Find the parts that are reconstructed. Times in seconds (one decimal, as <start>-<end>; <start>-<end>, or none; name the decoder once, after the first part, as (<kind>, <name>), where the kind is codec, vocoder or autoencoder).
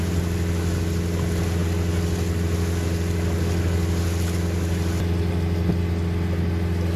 none